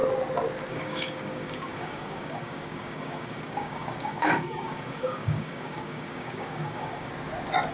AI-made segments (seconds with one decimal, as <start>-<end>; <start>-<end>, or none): 0.7-7.1